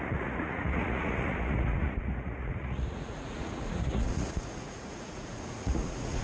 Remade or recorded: remade